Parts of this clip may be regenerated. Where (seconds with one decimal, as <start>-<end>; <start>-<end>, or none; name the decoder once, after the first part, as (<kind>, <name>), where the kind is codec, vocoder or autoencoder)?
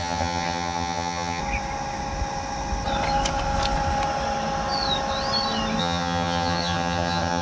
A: 0.0-1.4 (vocoder, HiFi-GAN); 5.8-7.4